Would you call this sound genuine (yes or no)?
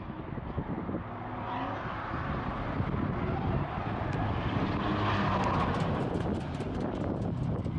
yes